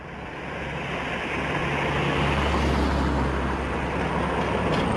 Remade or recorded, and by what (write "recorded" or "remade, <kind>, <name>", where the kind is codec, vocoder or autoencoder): recorded